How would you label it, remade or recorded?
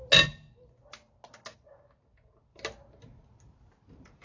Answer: recorded